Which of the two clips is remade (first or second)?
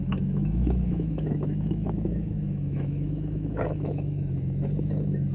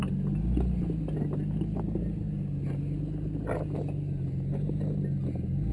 first